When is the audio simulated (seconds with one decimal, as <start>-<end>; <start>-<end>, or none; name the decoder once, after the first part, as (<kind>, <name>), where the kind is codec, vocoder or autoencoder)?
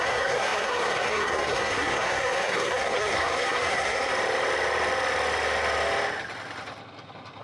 0.0-4.1 (codec, SNAC)